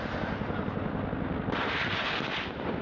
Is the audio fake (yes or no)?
no